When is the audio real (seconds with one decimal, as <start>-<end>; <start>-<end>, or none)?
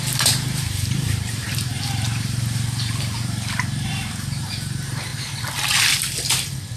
5.1-6.8